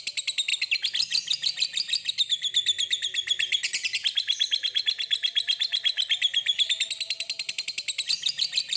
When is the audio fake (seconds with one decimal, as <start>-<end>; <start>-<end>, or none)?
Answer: none